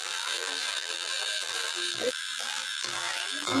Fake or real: fake